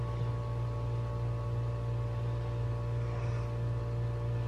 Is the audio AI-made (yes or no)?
no